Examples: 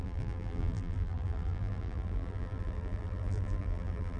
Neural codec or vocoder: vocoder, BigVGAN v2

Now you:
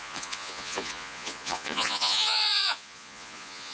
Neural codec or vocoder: vocoder, Vocos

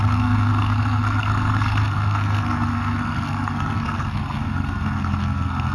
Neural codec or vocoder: codec, SNAC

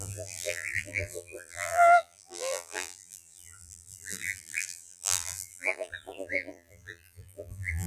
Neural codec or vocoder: vocoder, BigVGAN v2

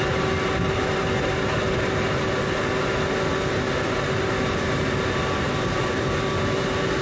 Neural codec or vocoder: none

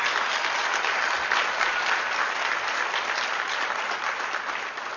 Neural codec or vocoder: none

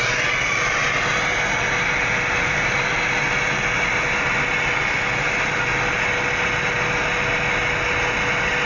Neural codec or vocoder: none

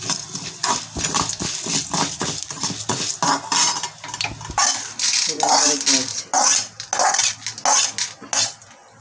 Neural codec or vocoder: none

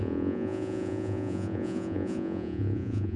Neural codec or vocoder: vocoder, Vocos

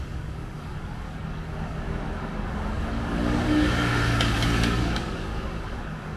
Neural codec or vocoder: codec, DAC